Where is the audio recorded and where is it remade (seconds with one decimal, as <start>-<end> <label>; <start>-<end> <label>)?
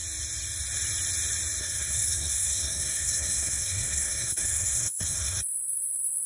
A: 0.0-1.6 recorded; 1.6-5.4 remade; 5.4-6.3 recorded